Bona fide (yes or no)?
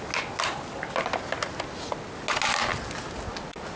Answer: yes